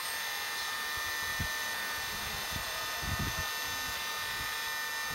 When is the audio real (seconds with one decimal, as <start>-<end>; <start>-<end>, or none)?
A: 0.0-1.3; 3.4-5.1